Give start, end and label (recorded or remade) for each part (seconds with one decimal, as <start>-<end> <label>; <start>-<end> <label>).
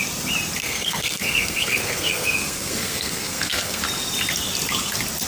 0.0-0.6 recorded; 0.6-3.8 remade; 3.8-5.3 recorded